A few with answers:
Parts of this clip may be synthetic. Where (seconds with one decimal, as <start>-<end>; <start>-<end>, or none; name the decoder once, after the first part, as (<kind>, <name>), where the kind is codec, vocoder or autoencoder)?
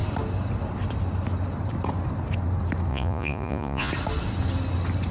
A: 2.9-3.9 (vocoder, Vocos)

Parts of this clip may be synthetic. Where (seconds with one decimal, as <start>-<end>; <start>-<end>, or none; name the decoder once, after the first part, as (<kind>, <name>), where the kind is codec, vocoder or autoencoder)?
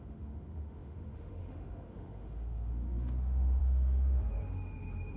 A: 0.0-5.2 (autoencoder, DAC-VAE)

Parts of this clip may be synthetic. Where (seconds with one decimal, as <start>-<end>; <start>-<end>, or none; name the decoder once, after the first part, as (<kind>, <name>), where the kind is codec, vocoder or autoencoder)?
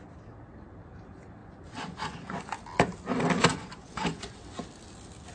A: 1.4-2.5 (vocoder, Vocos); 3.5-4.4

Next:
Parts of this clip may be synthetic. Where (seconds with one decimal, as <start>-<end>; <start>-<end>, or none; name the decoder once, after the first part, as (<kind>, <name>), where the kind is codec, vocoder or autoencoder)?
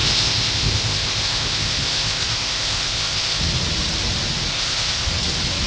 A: 0.0-3.4 (codec, ZipCodec); 4.5-5.1